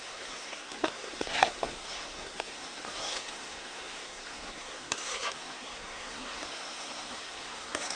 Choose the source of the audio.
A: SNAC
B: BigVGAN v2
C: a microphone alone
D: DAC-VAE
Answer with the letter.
A